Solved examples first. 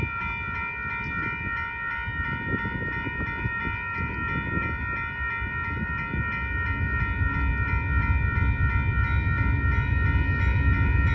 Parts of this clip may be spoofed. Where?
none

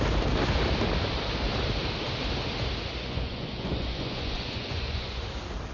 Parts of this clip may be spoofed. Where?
3.0-5.2 (vocoder, Vocos)

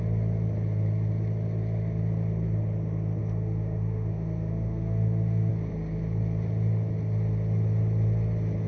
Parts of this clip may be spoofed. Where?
3.2-5.5 (autoencoder, DAC-VAE)

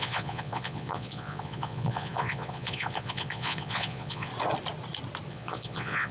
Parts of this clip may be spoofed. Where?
0.0-4.3 (vocoder, Vocos); 5.3-6.1

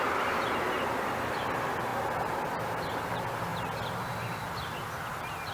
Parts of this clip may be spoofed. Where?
none

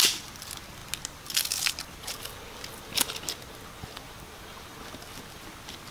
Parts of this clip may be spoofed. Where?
none